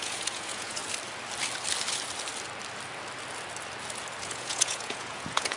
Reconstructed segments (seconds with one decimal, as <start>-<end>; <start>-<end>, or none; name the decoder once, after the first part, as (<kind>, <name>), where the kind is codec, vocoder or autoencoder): 0.0-0.8 (vocoder, Vocos); 4.2-5.6